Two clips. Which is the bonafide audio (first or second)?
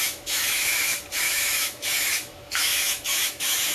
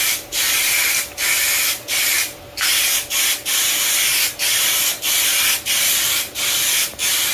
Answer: second